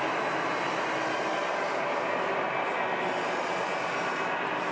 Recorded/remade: recorded